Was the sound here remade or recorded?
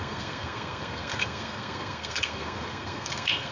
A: remade